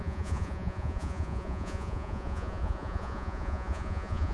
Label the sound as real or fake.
fake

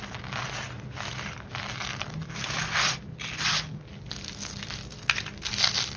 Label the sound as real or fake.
real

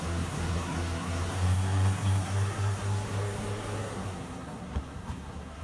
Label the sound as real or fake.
fake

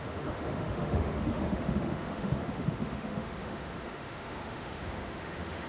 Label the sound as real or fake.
fake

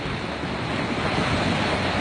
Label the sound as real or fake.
real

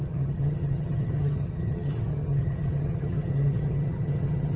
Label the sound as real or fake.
fake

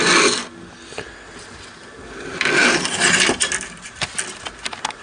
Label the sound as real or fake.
real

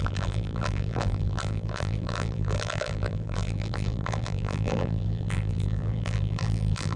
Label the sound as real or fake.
fake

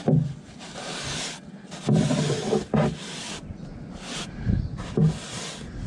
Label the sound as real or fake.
real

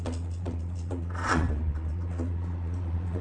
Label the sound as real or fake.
fake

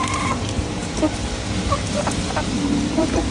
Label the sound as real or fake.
fake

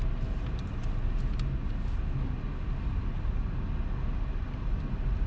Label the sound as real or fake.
real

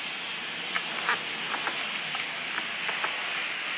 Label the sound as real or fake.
real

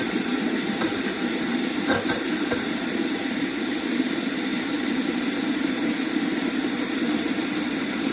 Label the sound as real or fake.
fake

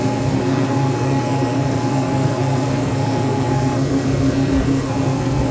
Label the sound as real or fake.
fake